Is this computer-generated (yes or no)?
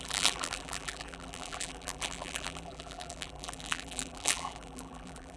yes